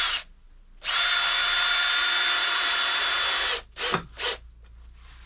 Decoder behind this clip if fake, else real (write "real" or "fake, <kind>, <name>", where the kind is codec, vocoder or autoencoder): real